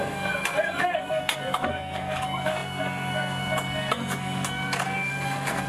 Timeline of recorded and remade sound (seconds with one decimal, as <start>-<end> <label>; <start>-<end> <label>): 0.0-5.7 remade